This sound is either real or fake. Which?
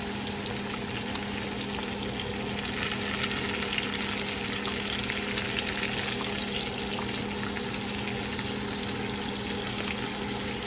real